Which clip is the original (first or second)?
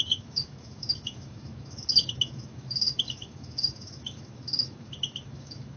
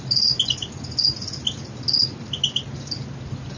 second